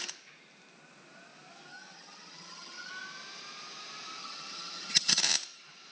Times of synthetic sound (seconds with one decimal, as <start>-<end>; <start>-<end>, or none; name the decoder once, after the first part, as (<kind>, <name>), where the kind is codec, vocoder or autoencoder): 1.7-2.9 (vocoder, HiFi-GAN); 4.2-5.2